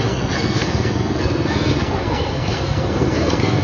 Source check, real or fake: fake